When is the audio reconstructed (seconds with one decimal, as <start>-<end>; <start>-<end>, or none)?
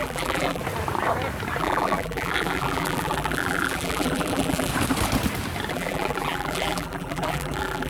0.0-0.6; 1.6-4.7; 5.7-7.9